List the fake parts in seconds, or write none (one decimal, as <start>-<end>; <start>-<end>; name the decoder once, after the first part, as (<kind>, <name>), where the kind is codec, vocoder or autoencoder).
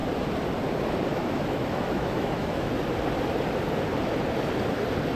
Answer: 1.1-2.7 (autoencoder, DAC-VAE)